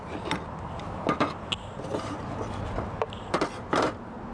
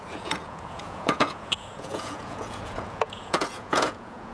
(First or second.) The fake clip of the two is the second